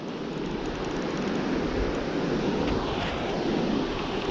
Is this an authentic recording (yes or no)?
yes